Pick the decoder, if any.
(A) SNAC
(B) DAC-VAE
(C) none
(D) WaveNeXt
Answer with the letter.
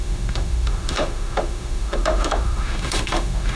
B